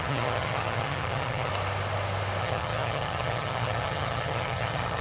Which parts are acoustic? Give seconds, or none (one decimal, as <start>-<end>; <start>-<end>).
1.5-2.4